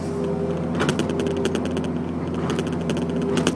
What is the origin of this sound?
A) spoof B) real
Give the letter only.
B